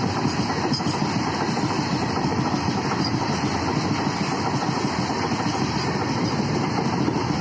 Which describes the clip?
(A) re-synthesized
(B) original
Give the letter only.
B